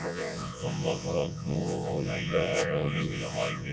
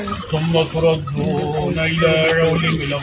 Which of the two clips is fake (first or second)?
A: first